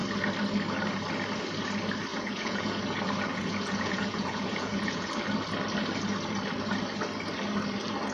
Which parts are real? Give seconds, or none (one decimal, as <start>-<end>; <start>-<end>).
0.0-2.1; 2.8-3.3; 5.1-8.1